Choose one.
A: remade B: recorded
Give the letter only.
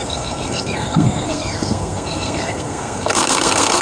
A